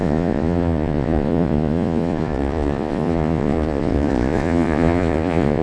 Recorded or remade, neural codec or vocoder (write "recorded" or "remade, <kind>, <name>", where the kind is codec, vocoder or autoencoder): remade, vocoder, Vocos